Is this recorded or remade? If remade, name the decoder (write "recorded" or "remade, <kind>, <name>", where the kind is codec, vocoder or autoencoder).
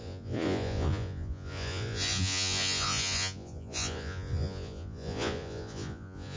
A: remade, vocoder, Vocos